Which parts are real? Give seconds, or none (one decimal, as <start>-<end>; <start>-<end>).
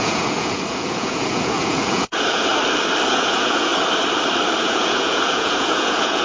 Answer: 2.5-3.1; 3.7-4.6